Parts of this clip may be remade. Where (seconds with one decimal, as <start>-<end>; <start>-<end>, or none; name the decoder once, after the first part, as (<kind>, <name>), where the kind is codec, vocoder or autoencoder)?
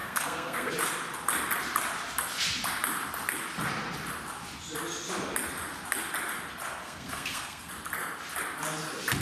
0.0-0.7 (codec, SNAC); 6.8-7.7